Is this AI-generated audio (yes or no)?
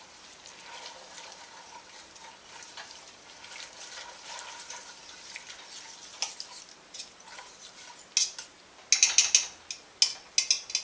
no